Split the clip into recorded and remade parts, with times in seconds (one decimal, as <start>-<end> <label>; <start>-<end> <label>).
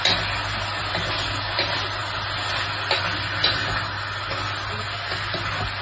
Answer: 0.0-5.8 recorded